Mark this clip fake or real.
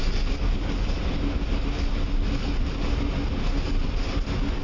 real